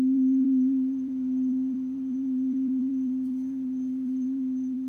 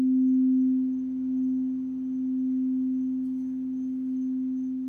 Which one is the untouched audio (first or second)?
second